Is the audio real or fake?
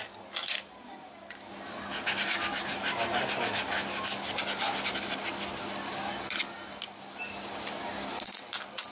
real